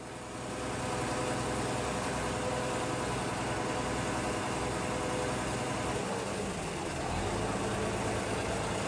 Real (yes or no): yes